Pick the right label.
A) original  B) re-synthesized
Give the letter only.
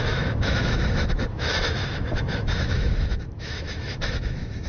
B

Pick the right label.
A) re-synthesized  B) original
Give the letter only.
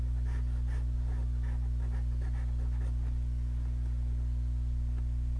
B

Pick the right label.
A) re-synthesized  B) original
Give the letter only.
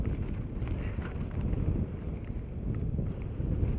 B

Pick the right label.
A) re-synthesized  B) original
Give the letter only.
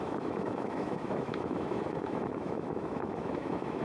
A